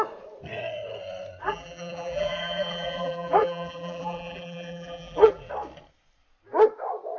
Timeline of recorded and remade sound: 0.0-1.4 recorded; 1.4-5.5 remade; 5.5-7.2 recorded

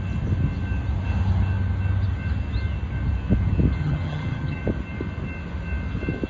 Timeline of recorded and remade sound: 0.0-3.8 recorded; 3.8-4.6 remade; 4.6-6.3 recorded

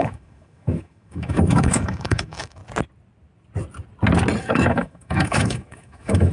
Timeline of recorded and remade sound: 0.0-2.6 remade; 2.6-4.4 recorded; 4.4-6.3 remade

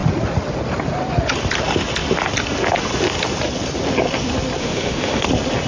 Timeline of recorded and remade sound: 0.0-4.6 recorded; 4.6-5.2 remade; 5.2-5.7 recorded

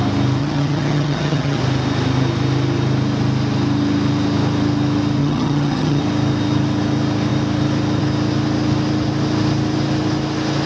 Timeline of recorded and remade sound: 0.0-0.4 recorded; 0.4-1.6 remade; 1.6-5.2 recorded; 5.2-6.0 remade; 6.0-10.7 recorded

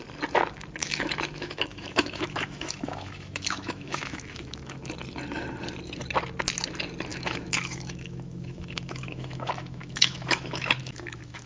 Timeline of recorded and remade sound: 0.0-0.8 recorded; 0.8-4.9 remade; 4.9-7.1 recorded; 7.1-11.5 remade

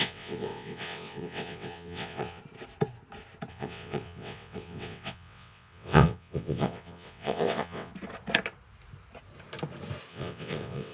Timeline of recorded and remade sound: 0.0-2.4 remade; 2.4-3.5 recorded; 3.5-7.9 remade; 7.9-10.1 recorded; 10.1-10.9 remade

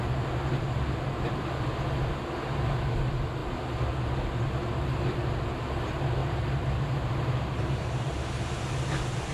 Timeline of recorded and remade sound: 0.0-6.2 recorded; 6.2-8.3 remade; 8.3-9.3 recorded